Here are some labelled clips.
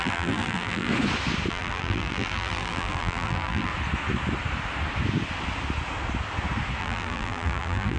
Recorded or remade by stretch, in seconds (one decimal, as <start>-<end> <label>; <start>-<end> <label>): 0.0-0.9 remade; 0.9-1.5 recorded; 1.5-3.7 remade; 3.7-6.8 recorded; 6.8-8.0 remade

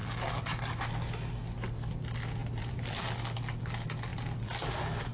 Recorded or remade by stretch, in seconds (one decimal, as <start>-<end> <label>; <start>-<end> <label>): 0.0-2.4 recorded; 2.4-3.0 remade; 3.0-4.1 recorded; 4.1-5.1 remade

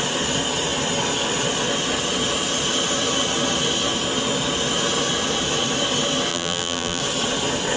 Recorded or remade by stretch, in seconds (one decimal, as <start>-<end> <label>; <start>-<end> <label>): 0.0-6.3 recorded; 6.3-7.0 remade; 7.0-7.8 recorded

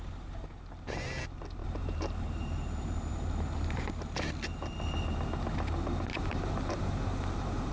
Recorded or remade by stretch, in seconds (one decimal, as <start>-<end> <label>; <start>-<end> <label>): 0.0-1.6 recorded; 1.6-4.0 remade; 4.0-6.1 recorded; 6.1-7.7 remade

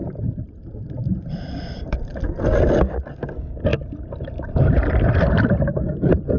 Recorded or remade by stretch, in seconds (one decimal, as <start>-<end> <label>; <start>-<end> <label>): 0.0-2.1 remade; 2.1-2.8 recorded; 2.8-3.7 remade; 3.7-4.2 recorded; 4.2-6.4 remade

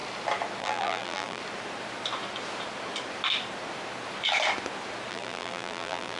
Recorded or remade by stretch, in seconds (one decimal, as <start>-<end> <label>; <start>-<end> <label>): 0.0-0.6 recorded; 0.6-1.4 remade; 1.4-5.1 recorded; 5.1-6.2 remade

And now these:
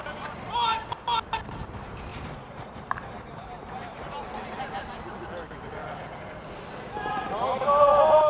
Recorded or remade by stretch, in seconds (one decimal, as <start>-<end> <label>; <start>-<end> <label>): 0.0-2.1 recorded; 2.1-4.0 remade; 4.0-8.3 recorded

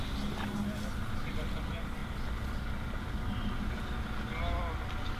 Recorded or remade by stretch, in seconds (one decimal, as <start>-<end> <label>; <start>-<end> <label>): 0.0-5.2 recorded